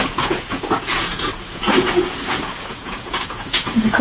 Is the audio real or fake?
fake